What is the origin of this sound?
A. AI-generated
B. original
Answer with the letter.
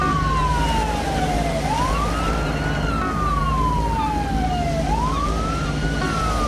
B